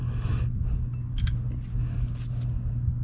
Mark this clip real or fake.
real